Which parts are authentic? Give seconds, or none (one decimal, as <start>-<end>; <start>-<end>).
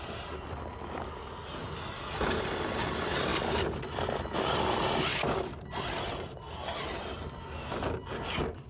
0.0-1.6; 2.2-8.7